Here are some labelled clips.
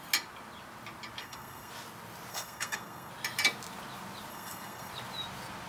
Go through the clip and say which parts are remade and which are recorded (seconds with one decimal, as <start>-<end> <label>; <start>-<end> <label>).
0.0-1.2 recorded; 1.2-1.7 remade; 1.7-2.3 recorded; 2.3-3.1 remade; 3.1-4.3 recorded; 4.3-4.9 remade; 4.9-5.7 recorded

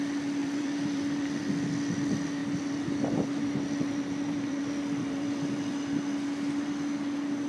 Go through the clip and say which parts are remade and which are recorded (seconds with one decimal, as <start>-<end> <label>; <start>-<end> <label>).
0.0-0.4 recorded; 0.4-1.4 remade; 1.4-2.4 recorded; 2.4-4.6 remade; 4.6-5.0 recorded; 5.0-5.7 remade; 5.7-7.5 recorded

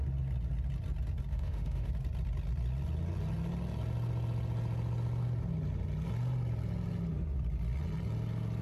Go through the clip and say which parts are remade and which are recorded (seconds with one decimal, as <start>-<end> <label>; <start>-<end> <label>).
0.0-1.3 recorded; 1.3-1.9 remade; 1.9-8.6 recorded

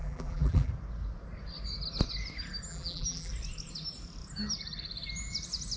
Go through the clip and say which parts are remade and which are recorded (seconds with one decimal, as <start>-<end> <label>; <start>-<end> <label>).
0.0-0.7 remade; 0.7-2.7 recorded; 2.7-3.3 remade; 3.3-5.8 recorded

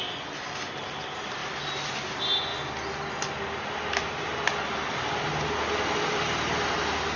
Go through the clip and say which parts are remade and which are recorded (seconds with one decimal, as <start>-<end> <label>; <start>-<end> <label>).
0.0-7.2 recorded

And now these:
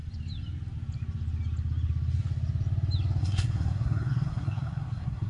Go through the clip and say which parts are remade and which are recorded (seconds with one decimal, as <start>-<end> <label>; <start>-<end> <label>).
0.0-3.2 recorded; 3.2-5.3 remade

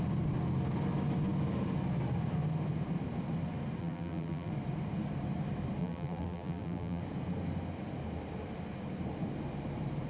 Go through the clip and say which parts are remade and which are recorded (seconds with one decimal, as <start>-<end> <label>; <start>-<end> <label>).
0.0-3.8 recorded; 3.8-4.5 remade; 4.5-5.8 recorded; 5.8-7.0 remade; 7.0-10.1 recorded